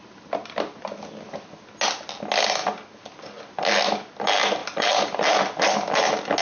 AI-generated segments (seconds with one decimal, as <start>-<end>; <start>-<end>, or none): 4.6-5.7